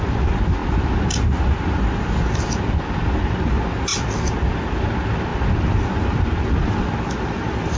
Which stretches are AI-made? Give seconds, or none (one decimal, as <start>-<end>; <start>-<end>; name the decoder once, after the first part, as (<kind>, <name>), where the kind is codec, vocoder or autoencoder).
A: none